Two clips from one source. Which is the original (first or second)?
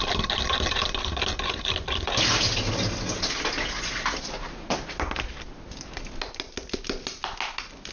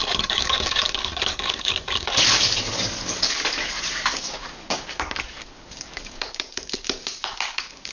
first